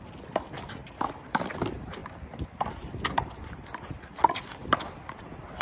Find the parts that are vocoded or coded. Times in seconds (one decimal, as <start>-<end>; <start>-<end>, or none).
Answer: 0.8-1.6; 2.0-3.6